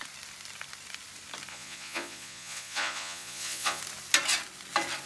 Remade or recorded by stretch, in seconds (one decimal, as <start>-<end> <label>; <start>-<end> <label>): 0.0-1.5 recorded; 1.5-3.8 remade; 3.8-5.1 recorded